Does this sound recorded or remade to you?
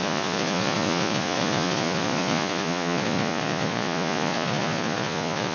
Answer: remade